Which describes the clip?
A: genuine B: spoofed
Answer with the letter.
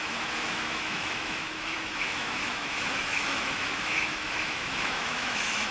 B